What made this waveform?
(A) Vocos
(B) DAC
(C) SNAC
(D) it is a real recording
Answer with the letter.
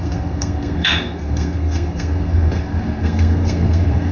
C